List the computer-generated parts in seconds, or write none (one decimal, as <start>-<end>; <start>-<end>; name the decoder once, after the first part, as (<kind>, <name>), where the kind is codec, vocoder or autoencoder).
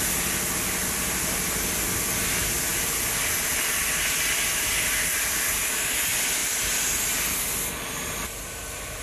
none